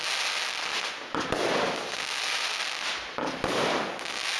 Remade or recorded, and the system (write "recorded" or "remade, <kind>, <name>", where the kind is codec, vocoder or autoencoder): recorded